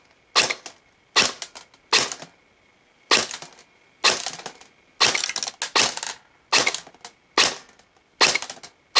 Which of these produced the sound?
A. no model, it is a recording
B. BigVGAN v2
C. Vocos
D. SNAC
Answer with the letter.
A